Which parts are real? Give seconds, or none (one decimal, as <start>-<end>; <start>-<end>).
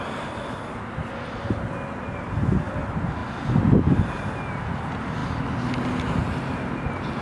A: 0.0-7.2